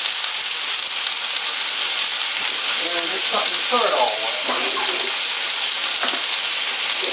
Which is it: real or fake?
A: real